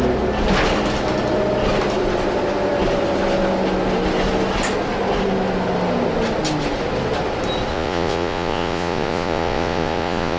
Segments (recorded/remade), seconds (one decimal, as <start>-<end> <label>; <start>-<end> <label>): 0.0-7.7 recorded; 7.7-10.4 remade